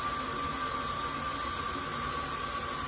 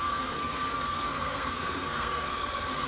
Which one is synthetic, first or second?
second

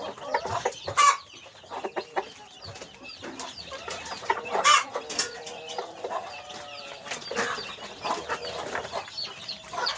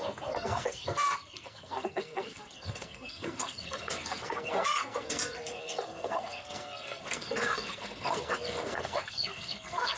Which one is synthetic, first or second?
second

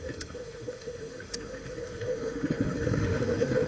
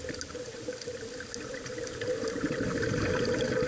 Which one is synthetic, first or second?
first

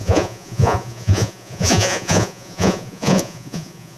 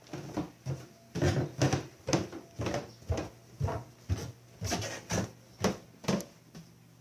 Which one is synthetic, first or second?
first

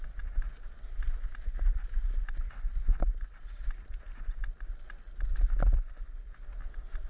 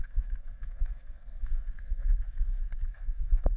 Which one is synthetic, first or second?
second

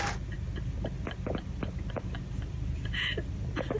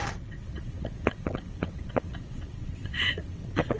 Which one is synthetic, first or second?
second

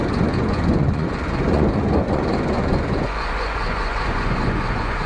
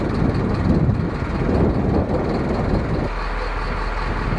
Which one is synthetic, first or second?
first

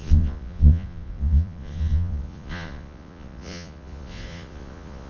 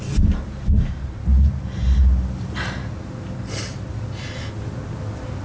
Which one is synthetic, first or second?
first